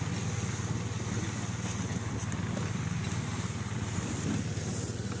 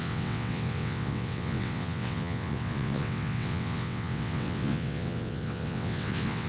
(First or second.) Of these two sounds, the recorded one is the first